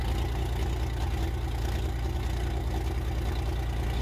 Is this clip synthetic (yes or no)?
no